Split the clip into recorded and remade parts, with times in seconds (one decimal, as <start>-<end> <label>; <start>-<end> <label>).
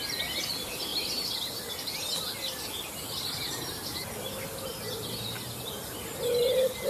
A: 0.0-0.9 recorded; 0.9-1.7 remade; 1.7-6.9 recorded